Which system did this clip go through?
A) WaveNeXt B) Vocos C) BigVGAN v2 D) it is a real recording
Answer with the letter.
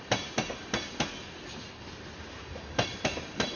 D